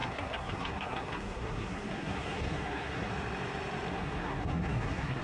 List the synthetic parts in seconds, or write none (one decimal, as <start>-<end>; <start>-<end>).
0.0-3.1; 3.9-5.2